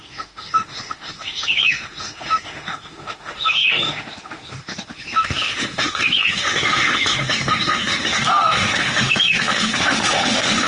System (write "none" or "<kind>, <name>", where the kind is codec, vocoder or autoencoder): autoencoder, DAC-VAE